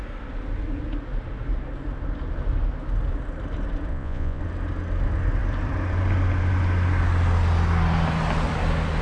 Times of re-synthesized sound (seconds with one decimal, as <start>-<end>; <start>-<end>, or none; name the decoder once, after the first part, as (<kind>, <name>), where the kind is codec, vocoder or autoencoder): 3.9-4.4 (vocoder, Vocos)